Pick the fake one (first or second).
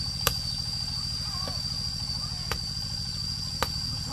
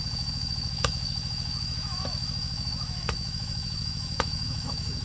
second